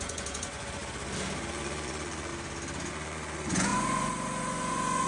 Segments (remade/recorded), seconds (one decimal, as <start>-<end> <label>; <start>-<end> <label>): 0.0-0.8 remade; 0.8-1.5 recorded; 1.5-2.3 remade; 2.3-2.9 recorded; 2.9-5.1 remade